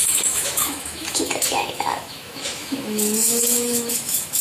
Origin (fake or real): fake